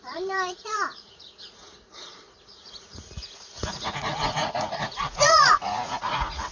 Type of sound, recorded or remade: remade